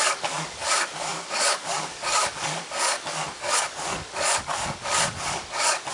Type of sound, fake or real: fake